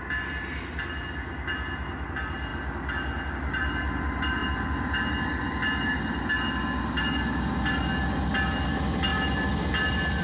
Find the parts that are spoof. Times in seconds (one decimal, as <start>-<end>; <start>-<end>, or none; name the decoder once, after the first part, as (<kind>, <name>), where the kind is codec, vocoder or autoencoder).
none